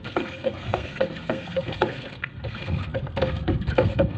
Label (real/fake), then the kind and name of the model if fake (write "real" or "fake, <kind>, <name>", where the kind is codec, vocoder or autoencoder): fake, codec, SNAC